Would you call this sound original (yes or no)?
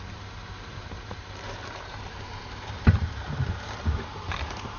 no